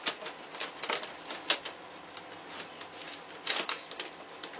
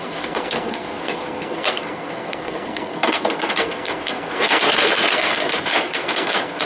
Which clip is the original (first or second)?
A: first